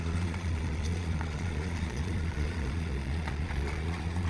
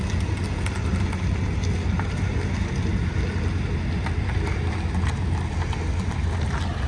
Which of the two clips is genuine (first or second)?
second